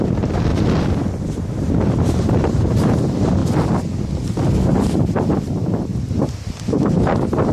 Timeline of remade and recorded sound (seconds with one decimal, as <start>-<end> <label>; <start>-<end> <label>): 0.0-0.5 remade; 0.5-2.3 recorded; 2.3-3.4 remade; 3.4-4.4 recorded; 4.4-5.9 remade; 5.9-6.7 recorded; 6.7-7.5 remade